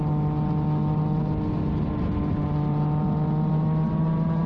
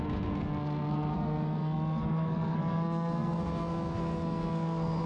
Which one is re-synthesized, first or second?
second